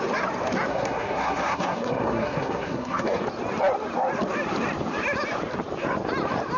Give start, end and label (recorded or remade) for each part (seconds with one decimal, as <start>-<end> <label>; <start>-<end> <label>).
0.0-0.7 recorded; 0.7-3.2 remade; 3.2-6.6 recorded